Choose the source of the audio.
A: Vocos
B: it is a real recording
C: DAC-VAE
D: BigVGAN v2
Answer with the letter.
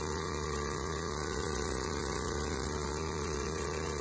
A